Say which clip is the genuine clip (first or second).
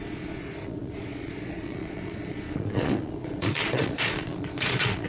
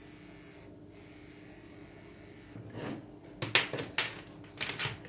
second